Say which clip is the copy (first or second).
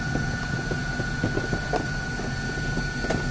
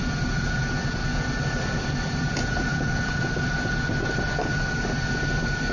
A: second